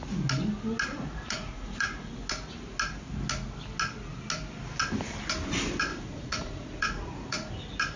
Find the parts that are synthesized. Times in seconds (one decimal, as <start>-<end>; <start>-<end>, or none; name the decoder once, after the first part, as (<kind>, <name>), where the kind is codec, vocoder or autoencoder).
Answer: 0.9-2.1 (vocoder, Vocos); 5.9-7.5